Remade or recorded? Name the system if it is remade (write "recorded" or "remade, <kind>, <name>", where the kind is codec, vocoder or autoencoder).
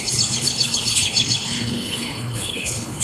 remade, codec, HILCodec